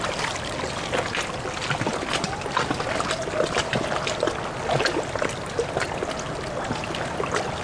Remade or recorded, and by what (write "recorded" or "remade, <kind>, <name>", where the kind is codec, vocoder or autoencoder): recorded